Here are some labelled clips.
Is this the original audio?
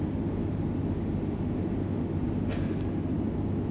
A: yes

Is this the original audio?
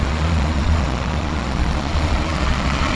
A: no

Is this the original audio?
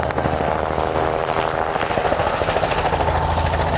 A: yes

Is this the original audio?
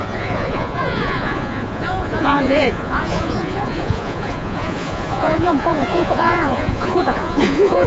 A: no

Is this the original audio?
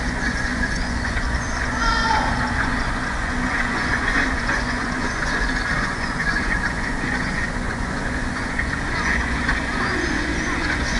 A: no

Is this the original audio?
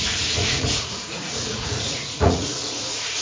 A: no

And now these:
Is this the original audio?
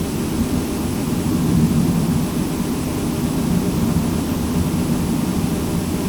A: yes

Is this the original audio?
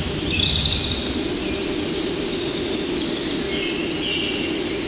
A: yes